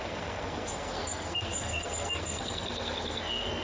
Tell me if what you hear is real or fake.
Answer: fake